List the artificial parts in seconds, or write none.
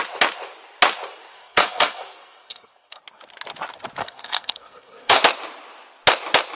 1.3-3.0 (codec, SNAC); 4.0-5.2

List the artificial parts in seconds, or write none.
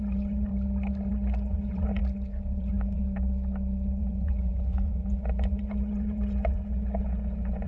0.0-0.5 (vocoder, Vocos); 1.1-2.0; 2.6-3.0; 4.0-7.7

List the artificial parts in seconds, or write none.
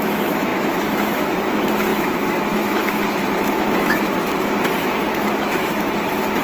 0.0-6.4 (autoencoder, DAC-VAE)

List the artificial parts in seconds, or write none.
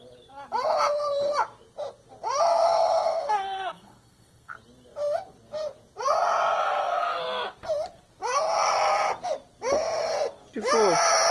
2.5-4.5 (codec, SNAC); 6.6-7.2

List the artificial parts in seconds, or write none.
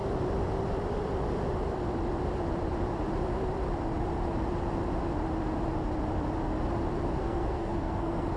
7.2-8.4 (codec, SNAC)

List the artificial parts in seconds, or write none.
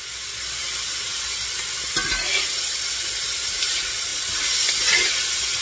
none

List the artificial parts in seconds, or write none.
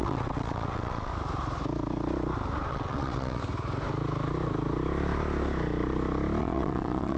0.0-1.1 (vocoder, WaveNeXt); 2.7-3.4; 6.4-7.2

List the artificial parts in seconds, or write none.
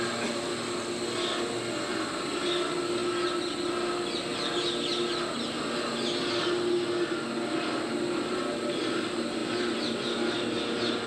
9.4-9.9 (vocoder, BigVGAN v2)